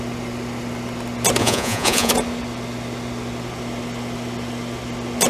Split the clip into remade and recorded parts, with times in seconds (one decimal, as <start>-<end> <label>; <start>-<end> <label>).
0.0-1.4 recorded; 1.4-2.1 remade; 2.1-5.3 recorded